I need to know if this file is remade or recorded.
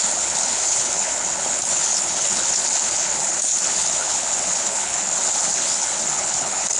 remade